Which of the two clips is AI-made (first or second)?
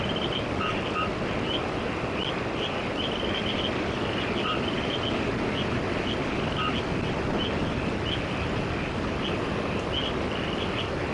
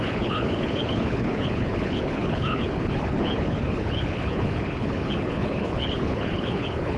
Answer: second